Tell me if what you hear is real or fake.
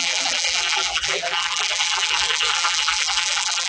fake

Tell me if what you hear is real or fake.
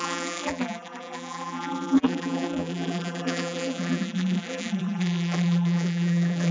fake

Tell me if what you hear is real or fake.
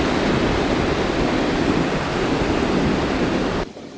real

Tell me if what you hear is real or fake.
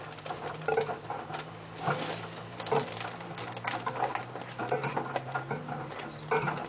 real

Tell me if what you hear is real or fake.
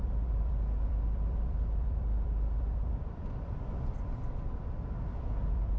fake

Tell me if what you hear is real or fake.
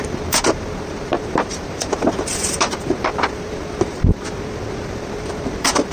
fake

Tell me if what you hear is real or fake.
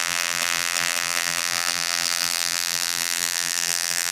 fake